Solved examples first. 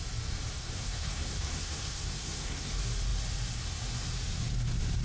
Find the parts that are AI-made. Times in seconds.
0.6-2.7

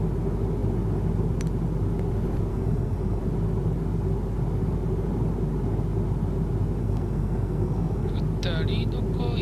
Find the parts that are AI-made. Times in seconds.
2.5-3.2; 6.8-8.1

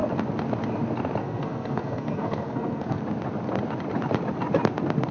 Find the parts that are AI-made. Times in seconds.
1.2-3.0

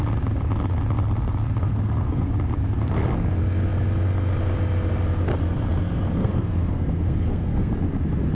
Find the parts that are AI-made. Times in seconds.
1.6-2.3; 6.2-7.7